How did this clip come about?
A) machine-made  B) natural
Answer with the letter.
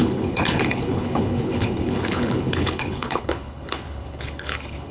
A